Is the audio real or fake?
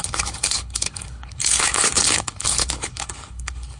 fake